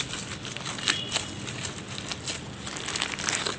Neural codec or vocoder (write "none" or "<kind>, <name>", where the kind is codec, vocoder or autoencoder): none